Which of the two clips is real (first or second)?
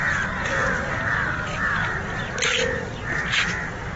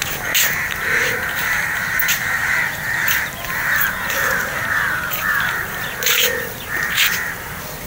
first